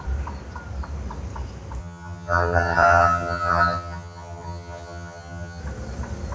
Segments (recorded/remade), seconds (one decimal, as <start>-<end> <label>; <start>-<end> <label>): 0.0-1.8 recorded; 1.8-5.6 remade; 5.6-6.3 recorded